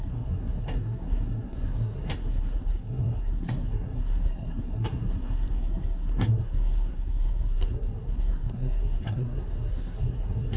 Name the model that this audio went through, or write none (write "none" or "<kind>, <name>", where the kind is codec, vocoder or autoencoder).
codec, SNAC